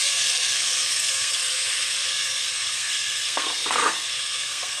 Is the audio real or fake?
fake